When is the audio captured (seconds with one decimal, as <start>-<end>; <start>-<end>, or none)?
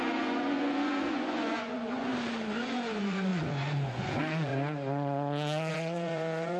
2.1-2.6; 4.5-5.7